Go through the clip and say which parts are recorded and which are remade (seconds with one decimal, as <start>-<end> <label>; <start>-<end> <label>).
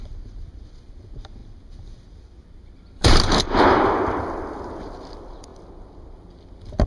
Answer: 0.0-6.9 remade